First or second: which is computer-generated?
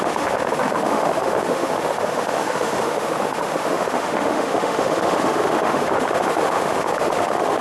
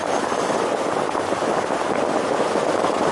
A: first